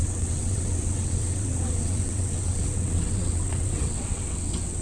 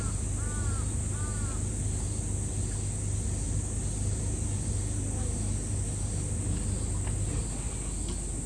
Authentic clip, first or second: second